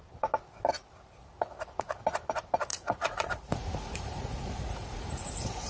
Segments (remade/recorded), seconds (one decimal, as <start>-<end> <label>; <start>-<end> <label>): 0.0-2.7 recorded; 2.7-5.7 remade